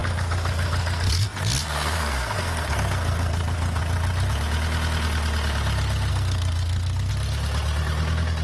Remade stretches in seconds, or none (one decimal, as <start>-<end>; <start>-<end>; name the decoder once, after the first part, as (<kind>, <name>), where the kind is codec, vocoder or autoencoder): 0.0-3.8 (codec, SNAC); 6.1-7.1